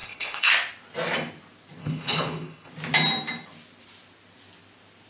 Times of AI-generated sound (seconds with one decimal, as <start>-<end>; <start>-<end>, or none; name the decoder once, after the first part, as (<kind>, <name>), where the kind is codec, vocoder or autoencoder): 0.0-0.5 (codec, HILCodec); 1.8-2.7